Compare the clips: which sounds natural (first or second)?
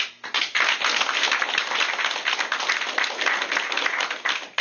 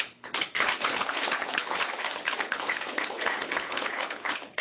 first